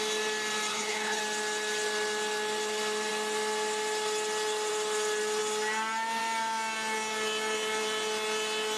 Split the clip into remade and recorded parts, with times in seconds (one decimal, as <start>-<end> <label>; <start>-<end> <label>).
0.0-0.7 recorded; 0.7-1.2 remade; 1.2-8.8 recorded